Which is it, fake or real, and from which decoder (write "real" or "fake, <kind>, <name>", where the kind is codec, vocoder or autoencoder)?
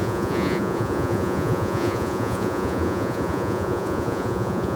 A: fake, vocoder, Vocos